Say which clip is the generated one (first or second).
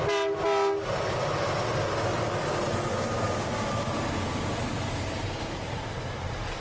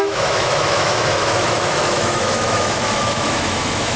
second